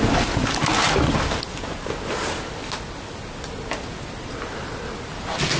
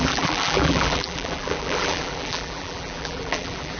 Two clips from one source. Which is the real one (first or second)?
first